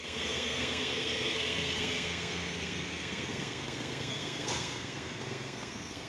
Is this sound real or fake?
fake